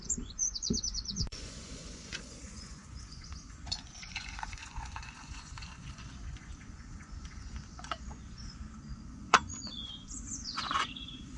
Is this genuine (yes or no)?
no